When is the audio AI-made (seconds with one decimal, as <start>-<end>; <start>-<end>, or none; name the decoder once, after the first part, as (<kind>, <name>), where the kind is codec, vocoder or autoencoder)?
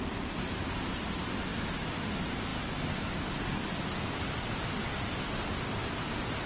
none